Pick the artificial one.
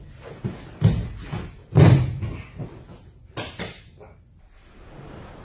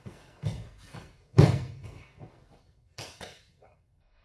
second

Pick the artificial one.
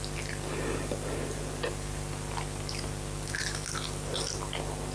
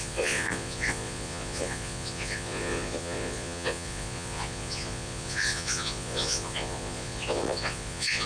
second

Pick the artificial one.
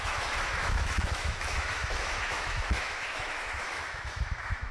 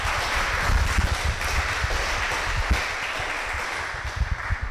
first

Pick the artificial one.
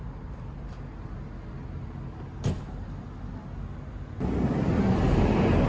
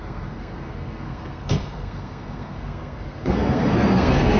second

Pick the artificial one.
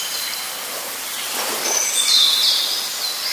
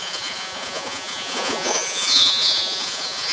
second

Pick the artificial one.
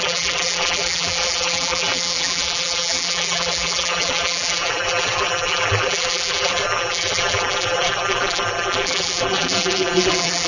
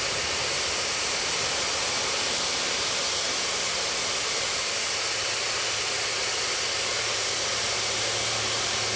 first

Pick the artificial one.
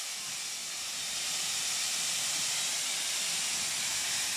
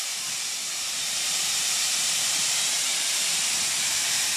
second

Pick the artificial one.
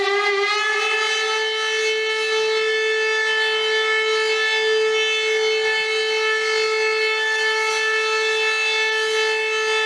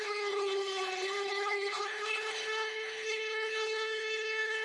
second